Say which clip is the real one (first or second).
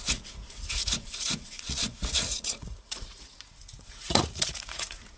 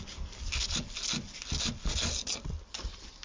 second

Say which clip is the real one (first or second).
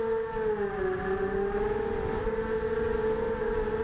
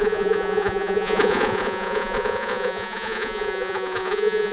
first